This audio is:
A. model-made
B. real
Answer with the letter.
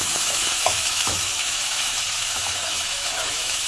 A